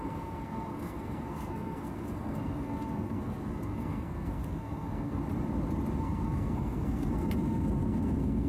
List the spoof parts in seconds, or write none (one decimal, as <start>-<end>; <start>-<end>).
0.0-5.2; 6.0-8.5